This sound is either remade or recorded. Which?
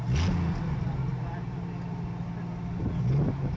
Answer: recorded